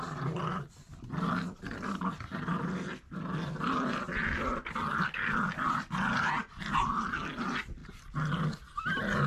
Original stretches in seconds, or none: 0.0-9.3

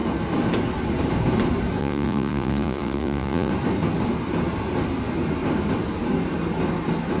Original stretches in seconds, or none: 0.0-1.8; 3.5-7.2